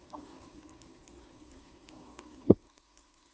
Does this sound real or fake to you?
fake